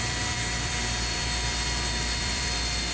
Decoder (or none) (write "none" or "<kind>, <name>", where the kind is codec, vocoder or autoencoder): vocoder, BigVGAN v2